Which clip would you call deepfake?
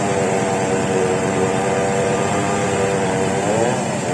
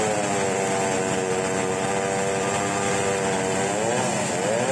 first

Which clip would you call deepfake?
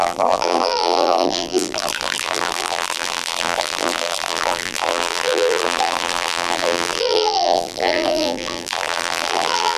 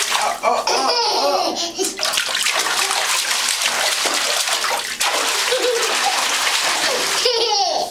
first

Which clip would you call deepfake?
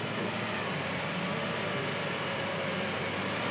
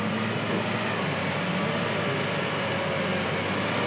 first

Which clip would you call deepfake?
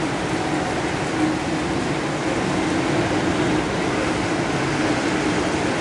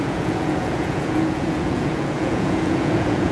second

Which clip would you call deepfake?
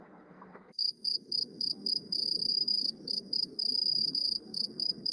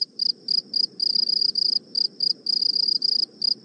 first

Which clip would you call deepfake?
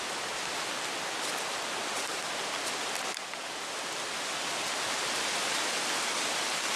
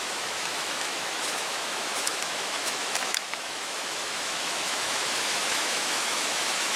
second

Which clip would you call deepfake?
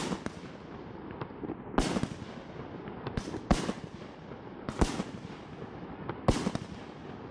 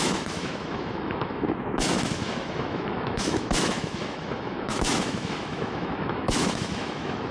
second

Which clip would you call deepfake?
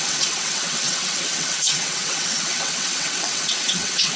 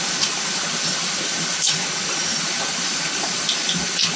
first